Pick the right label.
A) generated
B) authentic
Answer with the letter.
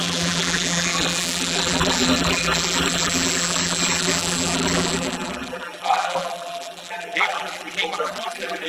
A